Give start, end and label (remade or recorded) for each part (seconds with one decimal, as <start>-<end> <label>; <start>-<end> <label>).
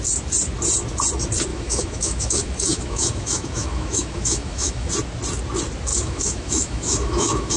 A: 0.0-1.5 recorded; 1.5-4.9 remade; 4.9-5.9 recorded; 5.9-7.6 remade